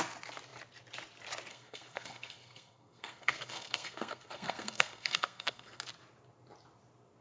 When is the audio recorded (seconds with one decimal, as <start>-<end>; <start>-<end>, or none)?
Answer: 0.0-1.5; 5.8-7.2